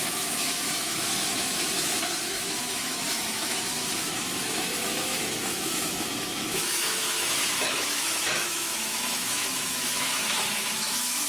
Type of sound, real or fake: fake